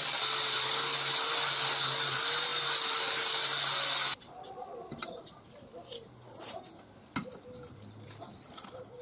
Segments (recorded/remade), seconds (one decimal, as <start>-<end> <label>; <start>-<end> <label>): 0.0-9.0 recorded